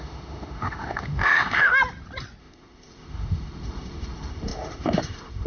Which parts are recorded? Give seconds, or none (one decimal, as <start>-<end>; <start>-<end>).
1.8-2.4